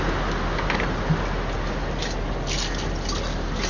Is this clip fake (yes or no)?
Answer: no